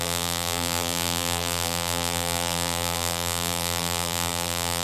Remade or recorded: remade